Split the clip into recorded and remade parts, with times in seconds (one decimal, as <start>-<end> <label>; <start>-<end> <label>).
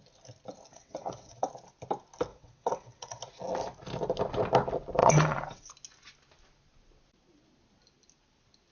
0.0-0.7 recorded; 0.7-1.5 remade; 1.5-2.3 recorded; 2.3-3.2 remade; 3.2-5.0 recorded; 5.0-5.7 remade; 5.7-8.7 recorded